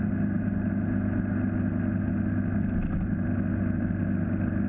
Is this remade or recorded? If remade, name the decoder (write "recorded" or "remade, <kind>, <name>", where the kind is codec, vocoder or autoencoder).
recorded